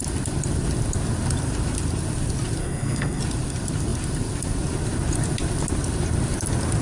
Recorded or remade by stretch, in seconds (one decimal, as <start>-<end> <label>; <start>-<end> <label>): 0.0-2.6 recorded; 2.6-3.2 remade; 3.2-6.8 recorded